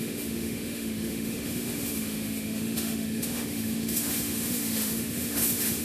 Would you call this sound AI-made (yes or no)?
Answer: yes